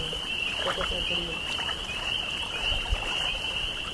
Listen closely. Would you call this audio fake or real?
fake